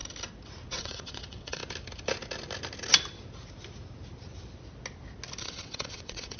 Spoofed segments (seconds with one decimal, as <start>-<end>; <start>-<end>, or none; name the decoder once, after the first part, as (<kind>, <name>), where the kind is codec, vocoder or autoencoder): 0.7-1.6 (vocoder, WaveNeXt); 5.4-6.4